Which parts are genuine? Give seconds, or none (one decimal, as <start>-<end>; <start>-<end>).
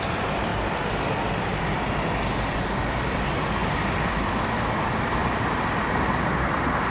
0.0-6.9